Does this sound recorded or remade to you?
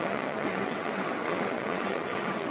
remade